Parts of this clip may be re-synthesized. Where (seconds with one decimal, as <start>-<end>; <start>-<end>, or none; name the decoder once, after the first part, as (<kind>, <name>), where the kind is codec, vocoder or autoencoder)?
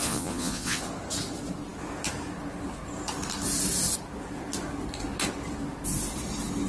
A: 0.0-0.8 (vocoder, Vocos)